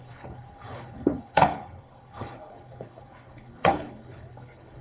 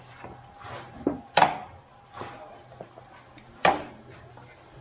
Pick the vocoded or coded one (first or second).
first